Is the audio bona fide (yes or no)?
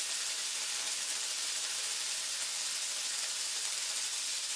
yes